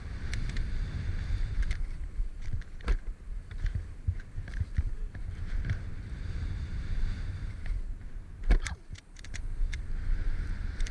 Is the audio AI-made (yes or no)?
yes